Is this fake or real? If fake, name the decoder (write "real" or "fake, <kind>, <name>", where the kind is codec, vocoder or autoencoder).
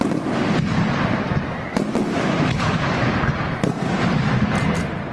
real